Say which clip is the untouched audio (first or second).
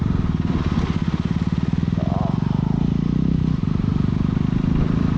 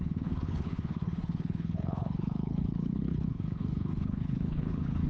first